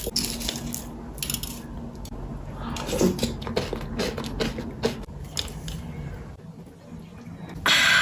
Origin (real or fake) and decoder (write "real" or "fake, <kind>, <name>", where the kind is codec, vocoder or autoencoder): real